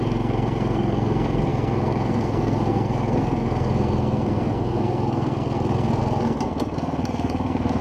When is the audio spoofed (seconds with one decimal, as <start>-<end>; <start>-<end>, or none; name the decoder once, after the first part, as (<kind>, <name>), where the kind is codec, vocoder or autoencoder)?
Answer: 0.0-7.8 (codec, SNAC)